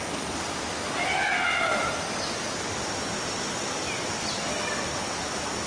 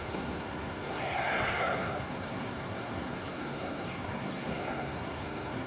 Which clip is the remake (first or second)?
second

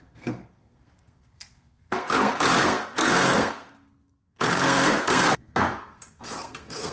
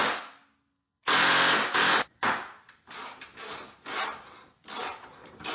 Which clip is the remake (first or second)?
first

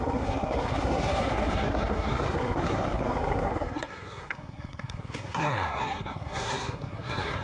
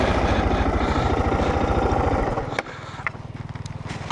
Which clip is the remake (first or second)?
first